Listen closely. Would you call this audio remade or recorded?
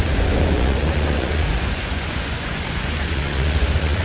remade